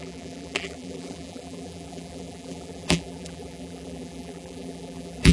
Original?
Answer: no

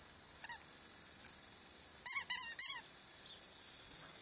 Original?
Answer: yes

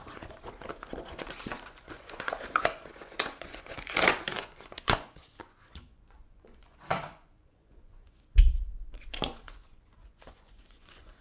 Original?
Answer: no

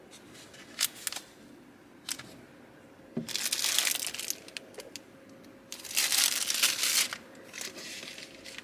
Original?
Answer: yes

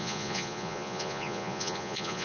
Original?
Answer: no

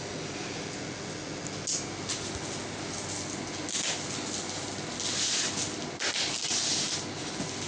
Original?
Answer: yes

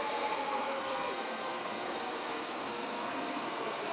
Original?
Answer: no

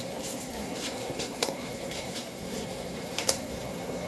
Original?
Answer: no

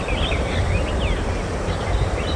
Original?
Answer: yes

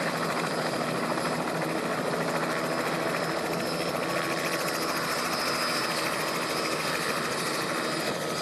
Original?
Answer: yes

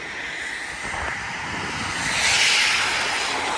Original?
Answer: yes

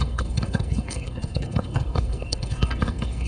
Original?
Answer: no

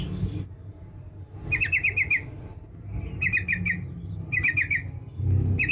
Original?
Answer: yes